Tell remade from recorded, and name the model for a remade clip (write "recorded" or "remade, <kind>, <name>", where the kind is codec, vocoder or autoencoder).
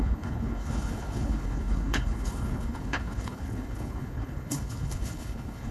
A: remade, codec, HILCodec